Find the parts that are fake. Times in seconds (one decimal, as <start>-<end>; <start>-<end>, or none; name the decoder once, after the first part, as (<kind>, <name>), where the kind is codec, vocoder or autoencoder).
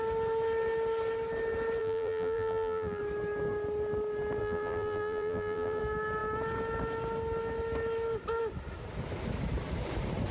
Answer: 1.8-3.0 (vocoder, BigVGAN v2); 4.4-5.8